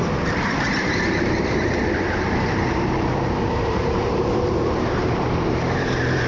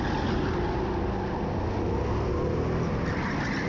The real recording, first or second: second